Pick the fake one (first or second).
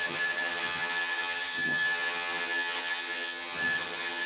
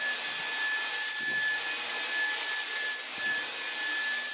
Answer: first